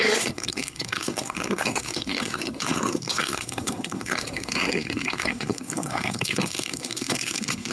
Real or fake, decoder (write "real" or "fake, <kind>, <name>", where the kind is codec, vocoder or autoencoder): fake, codec, SNAC